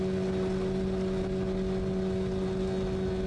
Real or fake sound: real